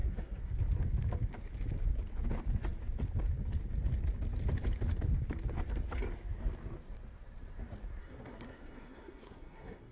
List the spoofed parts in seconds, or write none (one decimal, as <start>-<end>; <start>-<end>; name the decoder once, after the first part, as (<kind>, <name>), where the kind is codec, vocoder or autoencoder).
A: 0.0-0.5 (codec, SNAC); 8.0-9.9